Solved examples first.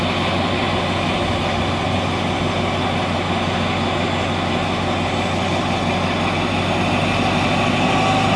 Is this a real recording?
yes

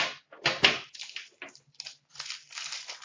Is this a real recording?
yes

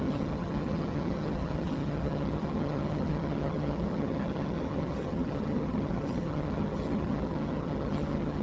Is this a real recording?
no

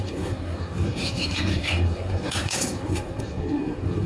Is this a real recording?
no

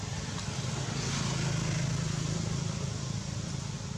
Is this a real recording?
yes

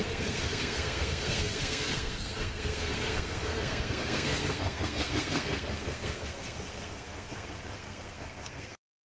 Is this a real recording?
no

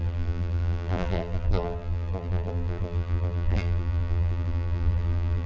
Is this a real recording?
no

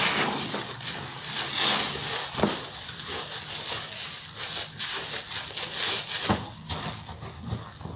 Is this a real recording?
yes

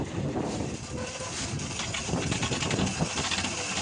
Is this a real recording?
yes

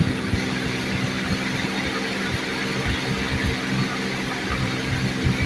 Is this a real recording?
yes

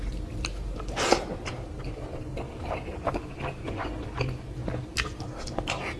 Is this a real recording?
yes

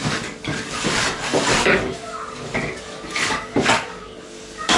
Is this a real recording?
no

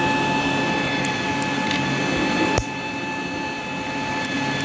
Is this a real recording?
yes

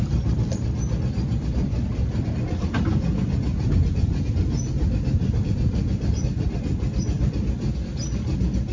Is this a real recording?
yes